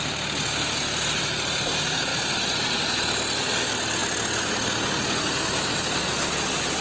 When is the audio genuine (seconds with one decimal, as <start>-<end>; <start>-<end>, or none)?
0.0-6.8